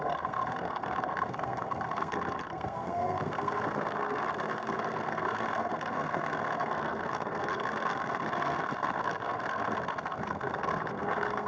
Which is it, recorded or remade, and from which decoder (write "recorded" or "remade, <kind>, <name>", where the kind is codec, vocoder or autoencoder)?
remade, codec, SNAC